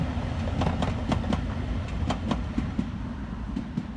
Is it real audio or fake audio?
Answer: real